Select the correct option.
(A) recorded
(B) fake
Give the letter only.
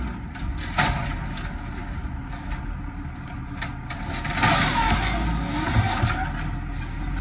A